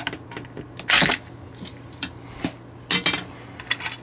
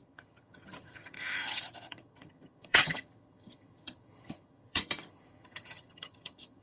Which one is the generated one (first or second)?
second